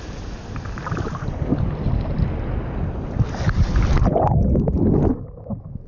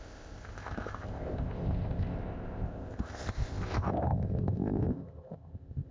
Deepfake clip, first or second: second